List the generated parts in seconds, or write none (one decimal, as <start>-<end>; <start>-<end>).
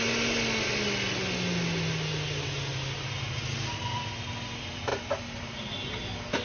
none